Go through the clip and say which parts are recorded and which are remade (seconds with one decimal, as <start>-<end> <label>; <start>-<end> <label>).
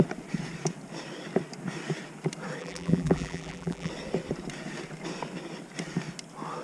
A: 0.0-2.6 recorded; 2.6-3.9 remade; 3.9-6.6 recorded